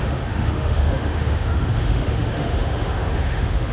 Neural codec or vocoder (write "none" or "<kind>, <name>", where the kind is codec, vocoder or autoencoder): autoencoder, DAC-VAE